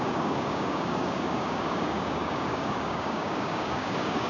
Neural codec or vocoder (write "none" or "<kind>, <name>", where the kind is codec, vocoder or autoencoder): codec, DAC